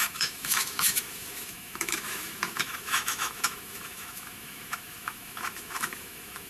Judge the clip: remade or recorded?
remade